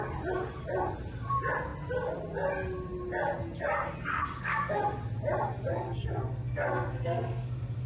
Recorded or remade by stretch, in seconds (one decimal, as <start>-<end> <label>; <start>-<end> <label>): 0.0-4.1 recorded; 4.1-4.8 remade; 4.8-5.7 recorded; 5.7-7.9 remade